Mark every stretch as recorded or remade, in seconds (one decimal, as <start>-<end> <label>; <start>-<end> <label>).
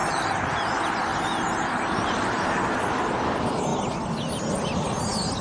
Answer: 0.0-5.4 recorded